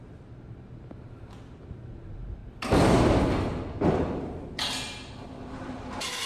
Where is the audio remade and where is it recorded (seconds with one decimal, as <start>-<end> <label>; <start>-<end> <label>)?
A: 0.0-2.4 remade; 2.4-5.1 recorded; 5.1-6.3 remade